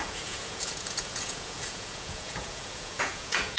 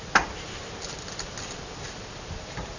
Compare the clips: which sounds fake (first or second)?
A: first